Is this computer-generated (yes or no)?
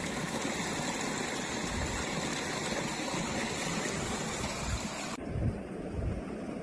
no